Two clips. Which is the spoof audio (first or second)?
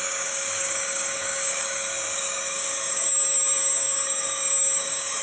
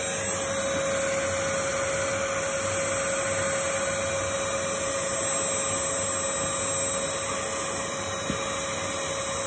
first